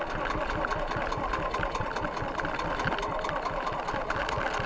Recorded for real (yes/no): yes